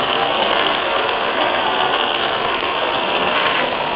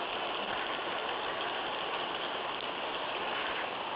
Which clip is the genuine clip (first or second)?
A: second